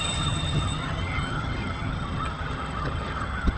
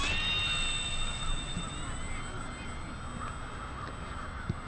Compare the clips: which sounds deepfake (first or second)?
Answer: first